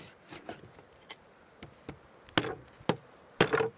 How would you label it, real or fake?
real